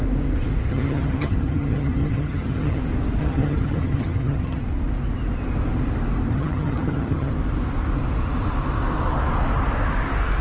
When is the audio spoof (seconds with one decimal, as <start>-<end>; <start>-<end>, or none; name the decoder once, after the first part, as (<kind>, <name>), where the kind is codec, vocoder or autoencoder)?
0.7-2.8 (vocoder, HiFi-GAN); 3.2-4.6; 6.3-7.3